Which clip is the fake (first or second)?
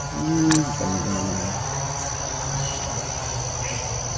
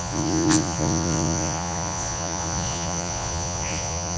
second